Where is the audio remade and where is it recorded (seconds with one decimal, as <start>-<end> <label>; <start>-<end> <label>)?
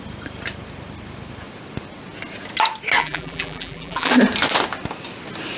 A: 0.0-3.0 recorded; 3.0-4.1 remade; 4.1-5.6 recorded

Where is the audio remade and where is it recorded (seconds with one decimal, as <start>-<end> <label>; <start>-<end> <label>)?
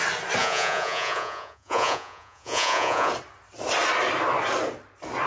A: 0.0-0.4 recorded; 0.4-3.1 remade; 3.1-5.3 recorded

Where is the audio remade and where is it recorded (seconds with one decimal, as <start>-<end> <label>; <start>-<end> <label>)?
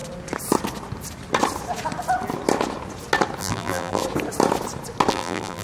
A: 0.0-3.4 recorded; 3.4-4.0 remade; 4.0-5.1 recorded; 5.1-5.6 remade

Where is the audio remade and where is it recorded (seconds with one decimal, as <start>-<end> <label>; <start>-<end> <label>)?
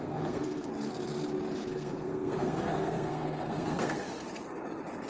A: 0.0-0.7 remade; 0.7-1.7 recorded; 1.7-4.4 remade; 4.4-5.1 recorded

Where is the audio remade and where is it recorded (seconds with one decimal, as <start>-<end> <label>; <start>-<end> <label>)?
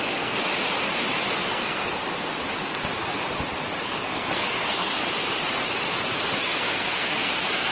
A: 0.0-0.4 remade; 0.4-1.4 recorded; 1.4-2.0 remade; 2.0-3.8 recorded; 3.8-5.0 remade; 5.0-6.4 recorded; 6.4-7.7 remade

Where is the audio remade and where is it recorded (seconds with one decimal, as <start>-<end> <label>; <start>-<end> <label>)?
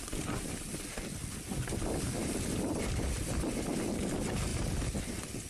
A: 0.0-5.5 recorded